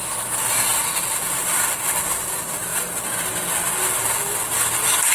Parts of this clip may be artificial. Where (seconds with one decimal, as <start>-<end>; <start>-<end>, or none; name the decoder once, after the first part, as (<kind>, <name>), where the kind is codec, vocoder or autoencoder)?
0.7-1.2 (vocoder, BigVGAN v2)